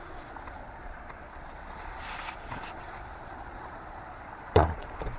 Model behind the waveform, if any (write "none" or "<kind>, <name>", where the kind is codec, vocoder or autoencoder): vocoder, Vocos